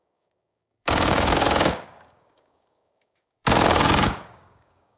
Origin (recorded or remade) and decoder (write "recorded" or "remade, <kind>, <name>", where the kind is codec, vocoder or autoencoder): remade, codec, DAC